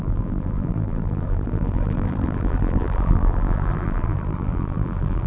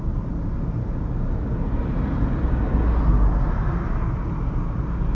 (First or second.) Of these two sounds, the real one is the second